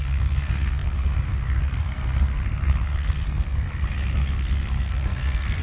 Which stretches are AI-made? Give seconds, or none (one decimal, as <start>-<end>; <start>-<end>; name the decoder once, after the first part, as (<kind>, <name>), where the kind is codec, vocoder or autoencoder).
0.0-5.6 (codec, SNAC)